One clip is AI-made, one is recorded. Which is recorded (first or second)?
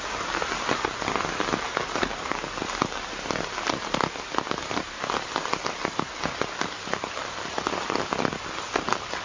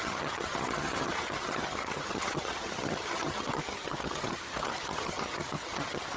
first